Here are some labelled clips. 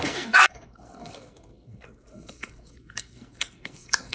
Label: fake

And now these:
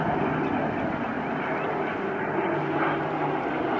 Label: real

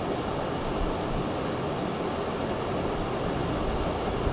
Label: real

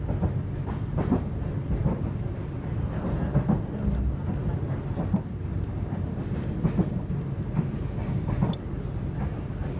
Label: real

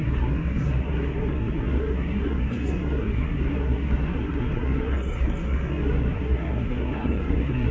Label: fake